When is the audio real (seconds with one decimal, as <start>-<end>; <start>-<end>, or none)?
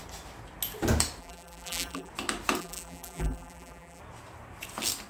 0.0-1.2; 2.1-2.6; 4.0-5.1